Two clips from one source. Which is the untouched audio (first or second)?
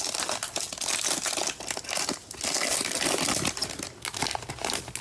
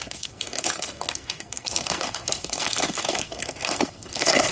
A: first